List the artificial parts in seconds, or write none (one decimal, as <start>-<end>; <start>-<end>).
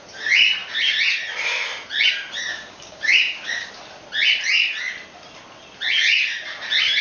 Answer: 2.5-3.7